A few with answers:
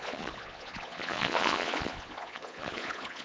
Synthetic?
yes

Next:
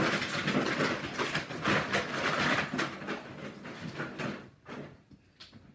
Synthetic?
no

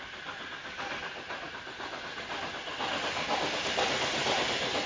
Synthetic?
no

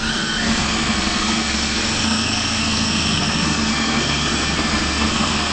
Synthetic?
yes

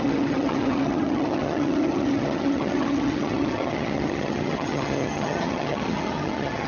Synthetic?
yes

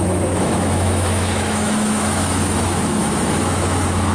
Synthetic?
yes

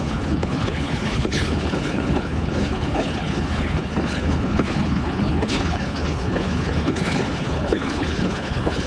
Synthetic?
yes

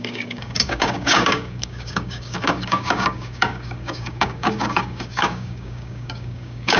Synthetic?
yes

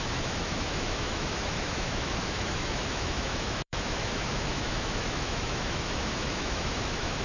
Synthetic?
yes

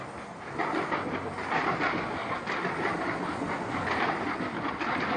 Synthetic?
no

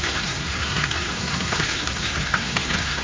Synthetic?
yes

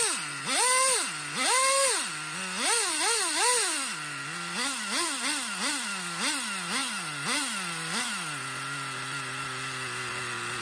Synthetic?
no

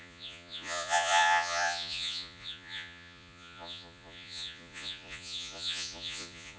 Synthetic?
yes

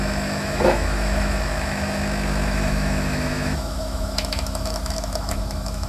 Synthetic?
yes